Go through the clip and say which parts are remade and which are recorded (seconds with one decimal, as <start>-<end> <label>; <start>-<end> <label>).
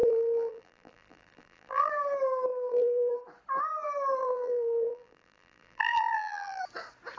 0.0-1.9 remade; 1.9-2.5 recorded; 2.5-3.1 remade; 3.1-4.2 recorded; 4.2-6.6 remade; 6.6-7.2 recorded